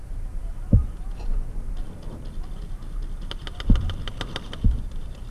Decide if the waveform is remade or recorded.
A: recorded